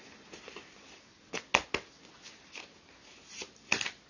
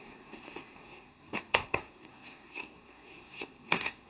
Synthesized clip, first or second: second